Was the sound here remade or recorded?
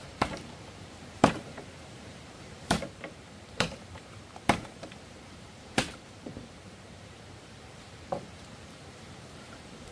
remade